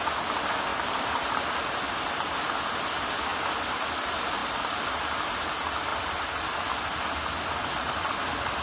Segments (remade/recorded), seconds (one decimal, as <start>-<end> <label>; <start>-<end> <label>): 0.0-0.7 recorded; 0.7-1.4 remade; 1.4-3.3 recorded; 3.3-4.0 remade; 4.0-4.4 recorded; 4.4-5.5 remade; 5.5-5.9 recorded; 5.9-6.7 remade; 6.7-8.6 recorded